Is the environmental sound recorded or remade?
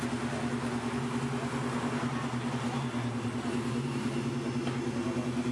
recorded